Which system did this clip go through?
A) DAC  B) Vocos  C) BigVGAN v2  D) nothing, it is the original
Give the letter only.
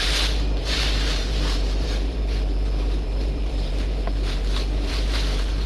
C